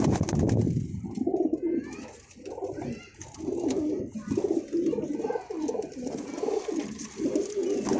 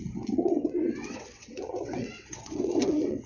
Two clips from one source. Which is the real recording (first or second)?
first